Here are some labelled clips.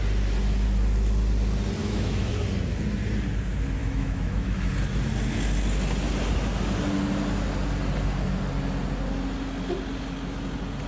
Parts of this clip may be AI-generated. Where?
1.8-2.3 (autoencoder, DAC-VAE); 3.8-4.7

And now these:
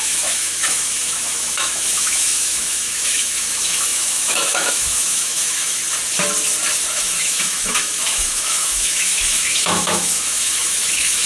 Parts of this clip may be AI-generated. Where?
0.0-5.8 (autoencoder, DAC-VAE); 6.9-11.3

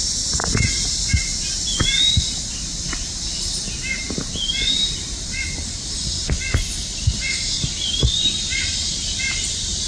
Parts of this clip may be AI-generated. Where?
none